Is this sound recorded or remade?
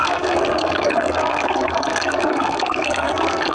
remade